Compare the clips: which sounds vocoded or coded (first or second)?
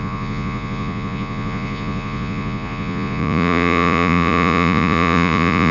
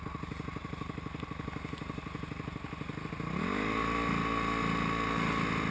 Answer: first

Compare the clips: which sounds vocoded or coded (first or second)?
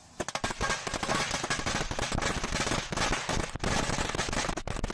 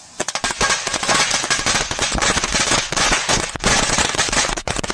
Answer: second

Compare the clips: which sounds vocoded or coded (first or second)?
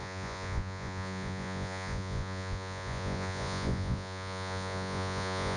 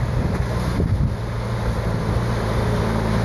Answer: first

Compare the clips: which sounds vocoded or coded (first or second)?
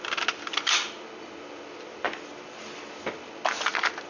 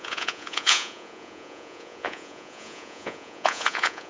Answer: second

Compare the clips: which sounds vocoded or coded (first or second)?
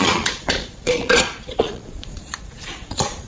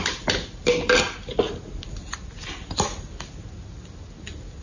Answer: first